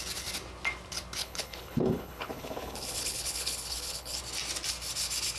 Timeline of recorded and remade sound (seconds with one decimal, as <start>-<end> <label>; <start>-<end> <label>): 0.0-1.2 recorded; 1.2-4.2 remade; 4.2-5.4 recorded